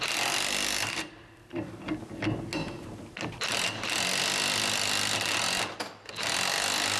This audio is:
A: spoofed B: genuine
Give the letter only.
B